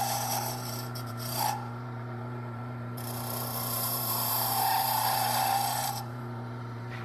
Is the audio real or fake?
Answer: fake